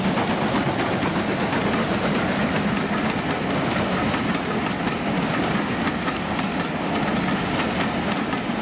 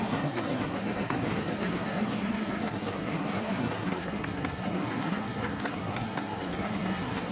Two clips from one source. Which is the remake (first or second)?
second